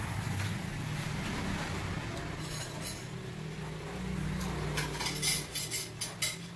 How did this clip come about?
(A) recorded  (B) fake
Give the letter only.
A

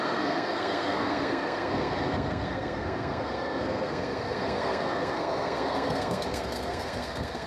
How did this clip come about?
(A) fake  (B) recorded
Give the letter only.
A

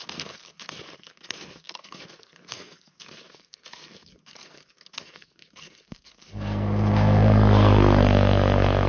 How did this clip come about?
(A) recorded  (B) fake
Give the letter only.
B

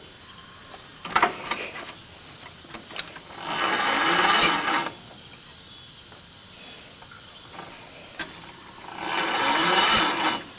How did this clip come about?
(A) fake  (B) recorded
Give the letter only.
B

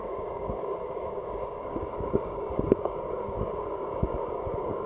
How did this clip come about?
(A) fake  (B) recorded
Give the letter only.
A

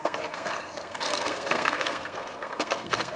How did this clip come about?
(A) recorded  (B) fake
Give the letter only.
B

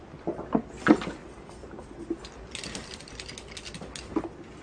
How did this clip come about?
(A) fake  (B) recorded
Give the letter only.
B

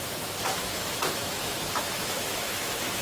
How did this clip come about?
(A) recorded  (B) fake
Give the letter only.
B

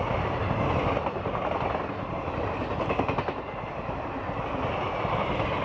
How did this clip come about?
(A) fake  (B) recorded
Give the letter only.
B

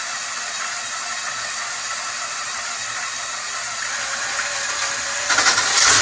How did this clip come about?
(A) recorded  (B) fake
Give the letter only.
A